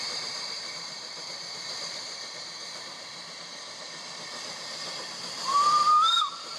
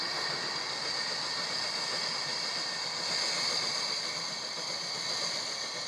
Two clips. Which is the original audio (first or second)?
second